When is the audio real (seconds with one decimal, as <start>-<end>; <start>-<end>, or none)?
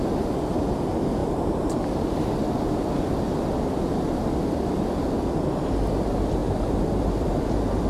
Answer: 0.0-1.2; 1.9-6.4; 7.3-7.9